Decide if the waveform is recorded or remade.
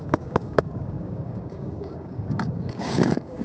remade